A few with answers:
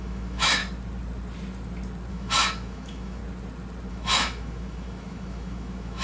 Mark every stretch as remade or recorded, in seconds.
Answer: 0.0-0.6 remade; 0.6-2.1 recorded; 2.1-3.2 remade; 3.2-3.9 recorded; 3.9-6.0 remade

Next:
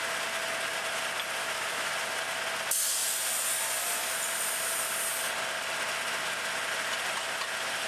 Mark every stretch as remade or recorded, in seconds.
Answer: 0.0-1.4 recorded; 1.4-1.9 remade; 1.9-7.9 recorded

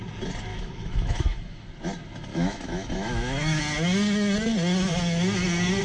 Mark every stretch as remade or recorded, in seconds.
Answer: 0.0-0.5 recorded; 0.5-1.7 remade; 1.7-2.3 recorded; 2.3-3.6 remade; 3.6-5.8 recorded